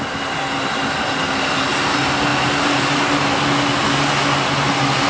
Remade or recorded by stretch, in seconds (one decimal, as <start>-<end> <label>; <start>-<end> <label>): 0.0-5.1 recorded